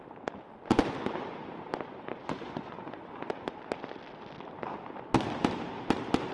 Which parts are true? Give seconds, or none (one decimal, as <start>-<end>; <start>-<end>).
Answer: 0.0-2.2; 3.7-6.3

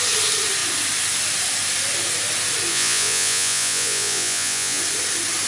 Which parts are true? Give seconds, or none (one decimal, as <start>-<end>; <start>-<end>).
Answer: 0.0-2.7; 4.8-5.5

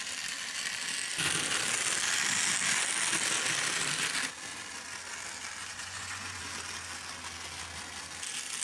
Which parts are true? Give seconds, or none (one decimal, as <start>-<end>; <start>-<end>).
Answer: 0.0-5.6; 6.4-8.6

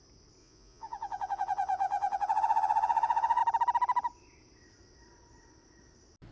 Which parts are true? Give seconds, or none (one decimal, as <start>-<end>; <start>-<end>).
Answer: 0.0-0.4; 3.4-6.3